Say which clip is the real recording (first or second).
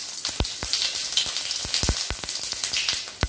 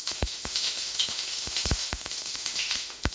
first